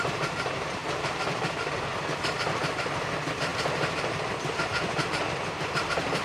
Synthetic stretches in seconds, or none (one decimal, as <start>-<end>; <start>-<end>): 0.0-0.8; 1.4-1.9; 2.6-6.2